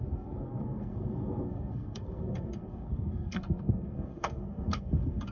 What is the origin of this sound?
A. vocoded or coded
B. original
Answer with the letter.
A